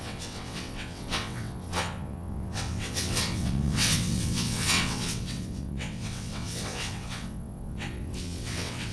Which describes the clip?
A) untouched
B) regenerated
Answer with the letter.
B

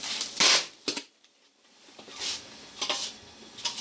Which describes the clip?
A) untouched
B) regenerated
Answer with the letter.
A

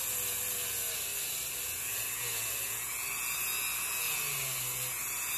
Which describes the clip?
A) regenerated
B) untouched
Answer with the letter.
B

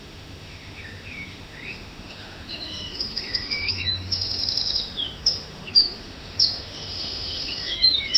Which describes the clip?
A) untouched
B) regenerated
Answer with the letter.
B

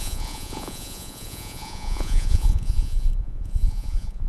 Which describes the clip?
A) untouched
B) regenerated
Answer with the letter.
B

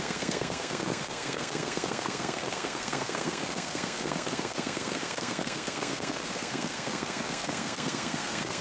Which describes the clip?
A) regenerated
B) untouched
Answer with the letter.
A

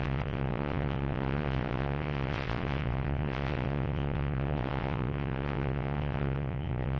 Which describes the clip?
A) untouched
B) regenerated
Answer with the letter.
B